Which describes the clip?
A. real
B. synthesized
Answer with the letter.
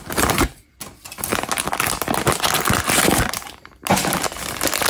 A